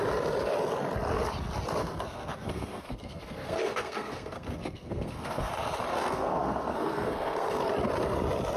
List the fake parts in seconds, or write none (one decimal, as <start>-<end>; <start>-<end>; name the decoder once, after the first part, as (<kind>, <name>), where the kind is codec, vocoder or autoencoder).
1.8-5.5 (codec, SNAC); 5.9-7.7